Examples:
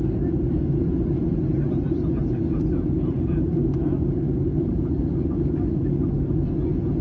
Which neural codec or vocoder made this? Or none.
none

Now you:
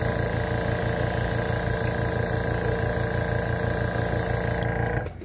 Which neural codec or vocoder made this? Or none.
none